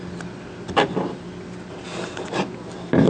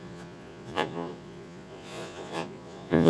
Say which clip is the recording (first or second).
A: first